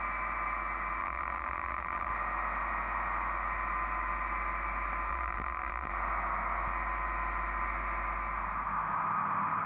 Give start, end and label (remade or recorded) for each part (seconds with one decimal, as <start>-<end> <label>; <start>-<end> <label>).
0.0-1.0 recorded; 1.0-2.1 remade; 2.1-5.1 recorded; 5.1-5.9 remade; 5.9-9.7 recorded